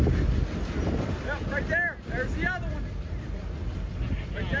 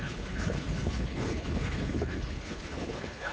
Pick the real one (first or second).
first